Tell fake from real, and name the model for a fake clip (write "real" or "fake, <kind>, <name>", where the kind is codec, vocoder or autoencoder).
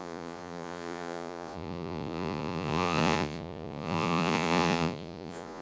fake, vocoder, Vocos